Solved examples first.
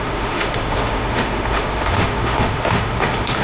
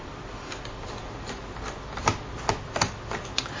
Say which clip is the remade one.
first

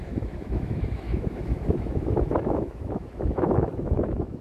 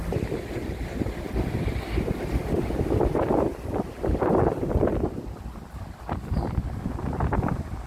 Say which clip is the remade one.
first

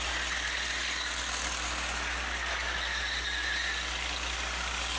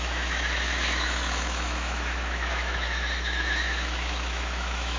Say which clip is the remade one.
second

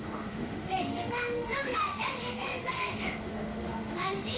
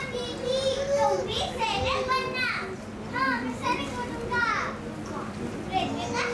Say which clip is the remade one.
first